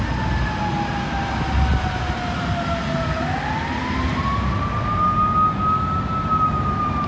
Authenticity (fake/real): real